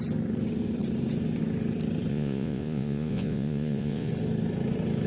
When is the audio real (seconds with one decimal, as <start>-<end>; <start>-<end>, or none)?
0.0-2.1; 4.1-5.1